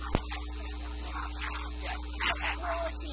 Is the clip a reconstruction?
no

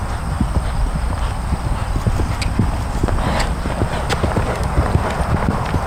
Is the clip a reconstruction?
no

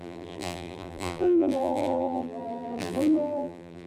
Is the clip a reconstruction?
yes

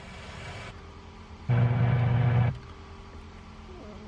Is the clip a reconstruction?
no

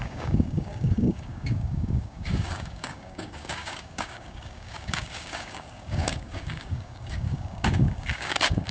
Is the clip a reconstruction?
yes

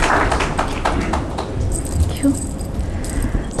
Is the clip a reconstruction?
yes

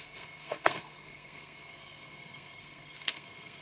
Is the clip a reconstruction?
yes